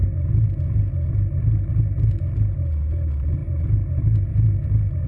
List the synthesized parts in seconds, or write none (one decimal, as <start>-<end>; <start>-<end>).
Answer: none